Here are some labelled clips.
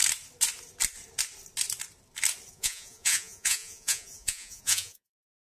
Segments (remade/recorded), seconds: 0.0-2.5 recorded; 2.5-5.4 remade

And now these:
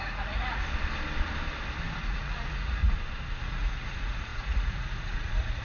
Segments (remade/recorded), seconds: 0.0-0.6 remade; 0.6-2.0 recorded; 2.0-2.8 remade; 2.8-3.4 recorded; 3.4-5.6 remade

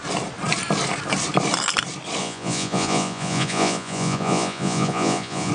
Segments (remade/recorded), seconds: 0.0-2.2 recorded; 2.2-5.5 remade

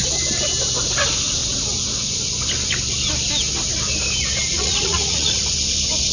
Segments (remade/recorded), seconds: 0.0-4.5 recorded; 4.5-5.4 remade; 5.4-6.1 recorded

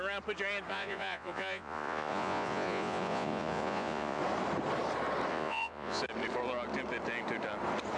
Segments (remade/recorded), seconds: 0.0-0.7 recorded; 0.7-4.2 remade; 4.2-5.3 recorded; 5.3-6.0 remade; 6.0-8.0 recorded

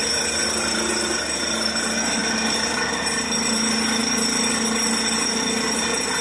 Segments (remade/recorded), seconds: 0.0-6.2 recorded

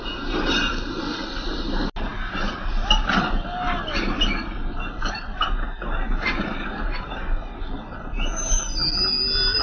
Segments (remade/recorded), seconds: 0.0-9.6 recorded

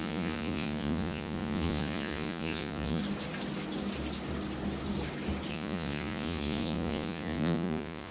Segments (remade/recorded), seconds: 0.0-3.0 remade; 3.0-5.5 recorded; 5.5-8.1 remade